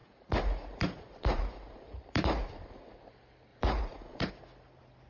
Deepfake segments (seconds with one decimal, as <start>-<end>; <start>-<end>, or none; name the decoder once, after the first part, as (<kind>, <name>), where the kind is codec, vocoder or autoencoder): 0.0-3.1 (vocoder, Vocos); 3.5-4.3